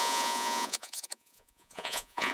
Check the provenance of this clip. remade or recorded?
remade